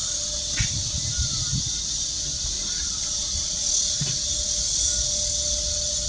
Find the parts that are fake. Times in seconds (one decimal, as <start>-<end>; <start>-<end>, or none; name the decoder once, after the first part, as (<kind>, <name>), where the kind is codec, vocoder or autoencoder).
none